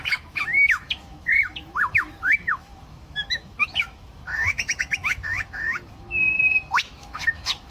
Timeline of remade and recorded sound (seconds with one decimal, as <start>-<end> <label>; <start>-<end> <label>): 0.0-7.7 remade